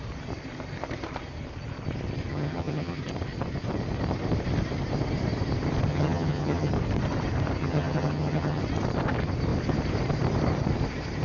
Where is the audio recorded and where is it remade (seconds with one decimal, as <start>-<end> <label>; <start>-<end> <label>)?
0.0-2.3 recorded; 2.3-3.0 remade; 3.0-5.9 recorded; 5.9-6.7 remade; 6.7-7.6 recorded; 7.6-8.6 remade; 8.6-11.2 recorded